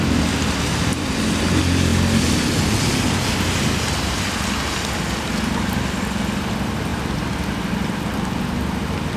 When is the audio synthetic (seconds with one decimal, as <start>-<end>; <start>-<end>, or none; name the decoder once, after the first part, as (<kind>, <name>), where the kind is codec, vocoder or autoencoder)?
none